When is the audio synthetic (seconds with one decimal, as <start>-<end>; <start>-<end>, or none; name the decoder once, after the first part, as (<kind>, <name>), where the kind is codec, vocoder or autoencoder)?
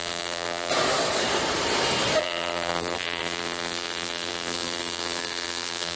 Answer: 0.0-0.7 (vocoder, BigVGAN v2); 2.2-6.0